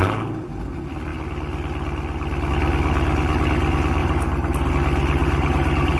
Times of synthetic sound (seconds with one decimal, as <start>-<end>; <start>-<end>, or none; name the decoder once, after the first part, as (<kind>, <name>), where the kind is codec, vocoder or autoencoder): 4.0-4.7 (vocoder, BigVGAN v2); 5.2-6.0